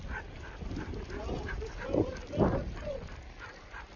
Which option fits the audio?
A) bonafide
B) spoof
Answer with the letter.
A